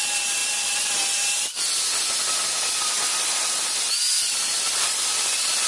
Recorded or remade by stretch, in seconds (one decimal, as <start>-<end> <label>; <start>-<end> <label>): 0.0-5.7 recorded